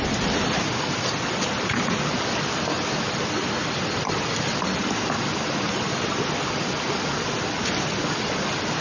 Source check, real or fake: real